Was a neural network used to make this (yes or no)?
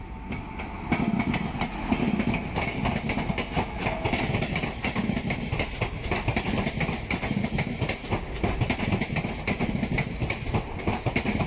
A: no